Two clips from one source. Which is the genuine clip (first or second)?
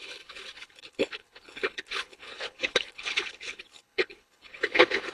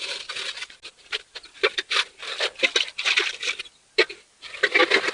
second